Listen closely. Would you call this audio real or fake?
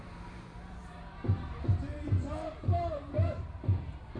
fake